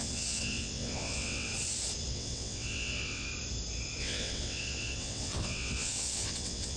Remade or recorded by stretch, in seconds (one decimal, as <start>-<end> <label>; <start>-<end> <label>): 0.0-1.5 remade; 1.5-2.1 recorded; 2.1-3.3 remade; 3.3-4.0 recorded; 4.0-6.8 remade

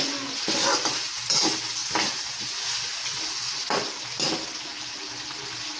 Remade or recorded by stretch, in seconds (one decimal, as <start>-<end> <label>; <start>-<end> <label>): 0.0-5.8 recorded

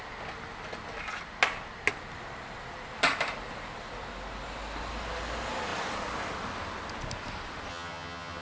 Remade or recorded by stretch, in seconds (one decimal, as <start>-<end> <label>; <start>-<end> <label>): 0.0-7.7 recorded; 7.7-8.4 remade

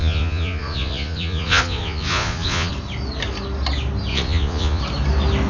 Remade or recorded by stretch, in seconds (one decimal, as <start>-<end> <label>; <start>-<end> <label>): 0.0-2.7 remade; 2.7-4.1 recorded; 4.1-4.8 remade; 4.8-5.5 recorded

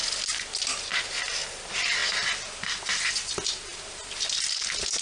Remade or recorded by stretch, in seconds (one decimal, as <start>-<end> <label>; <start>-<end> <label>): 0.0-3.7 recorded; 3.7-4.6 remade; 4.6-5.0 recorded